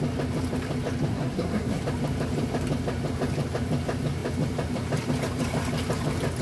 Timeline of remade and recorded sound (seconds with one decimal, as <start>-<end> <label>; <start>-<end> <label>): 0.0-1.1 recorded; 1.1-1.8 remade; 1.8-6.4 recorded